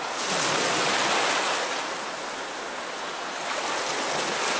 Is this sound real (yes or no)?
yes